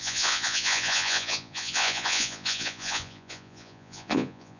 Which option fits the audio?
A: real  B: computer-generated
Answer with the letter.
B